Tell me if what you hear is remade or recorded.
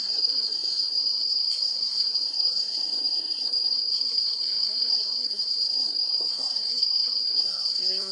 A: remade